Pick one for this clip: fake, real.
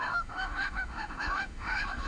fake